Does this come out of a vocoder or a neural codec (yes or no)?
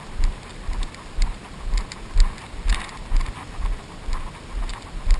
no